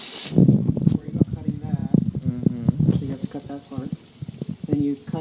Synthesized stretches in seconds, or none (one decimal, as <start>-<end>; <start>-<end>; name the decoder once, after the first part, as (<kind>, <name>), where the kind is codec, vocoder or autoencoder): 0.4-1.2 (vocoder, Vocos)